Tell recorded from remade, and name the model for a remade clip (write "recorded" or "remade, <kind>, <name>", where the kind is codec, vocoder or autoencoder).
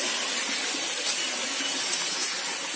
recorded